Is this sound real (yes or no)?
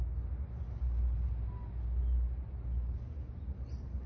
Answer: yes